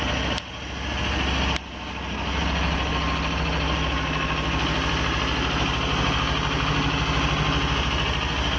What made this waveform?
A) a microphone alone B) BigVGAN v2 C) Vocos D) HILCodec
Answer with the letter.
A